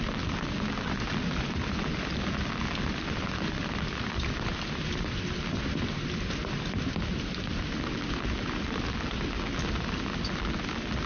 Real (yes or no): yes